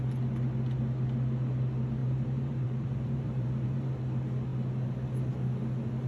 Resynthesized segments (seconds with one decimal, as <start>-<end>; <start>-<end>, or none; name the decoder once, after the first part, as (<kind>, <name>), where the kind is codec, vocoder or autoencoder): 2.0-4.0 (vocoder, BigVGAN v2)